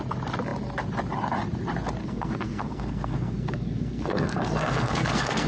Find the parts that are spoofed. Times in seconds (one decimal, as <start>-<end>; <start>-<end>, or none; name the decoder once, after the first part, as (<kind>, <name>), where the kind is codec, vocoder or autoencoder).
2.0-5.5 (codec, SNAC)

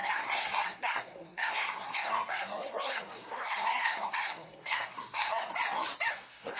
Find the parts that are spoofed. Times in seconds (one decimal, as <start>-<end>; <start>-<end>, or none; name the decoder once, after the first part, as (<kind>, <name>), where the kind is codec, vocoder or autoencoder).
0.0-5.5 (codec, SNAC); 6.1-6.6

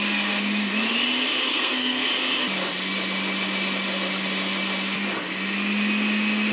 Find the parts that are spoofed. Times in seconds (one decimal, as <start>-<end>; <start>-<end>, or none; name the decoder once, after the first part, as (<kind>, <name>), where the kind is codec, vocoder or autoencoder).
1.5-2.1 (codec, SNAC)

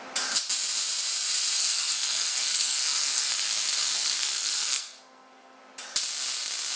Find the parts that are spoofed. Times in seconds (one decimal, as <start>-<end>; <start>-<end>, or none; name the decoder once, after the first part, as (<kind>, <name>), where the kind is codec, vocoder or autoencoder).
1.6-5.6 (codec, SNAC)